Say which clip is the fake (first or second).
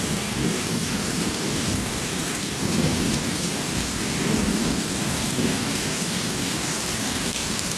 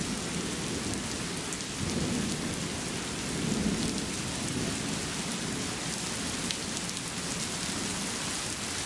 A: first